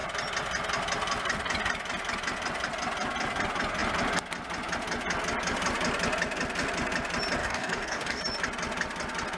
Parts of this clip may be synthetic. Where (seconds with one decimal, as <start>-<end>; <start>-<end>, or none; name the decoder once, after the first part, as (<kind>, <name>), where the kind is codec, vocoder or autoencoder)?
7.4-8.2 (codec, DAC)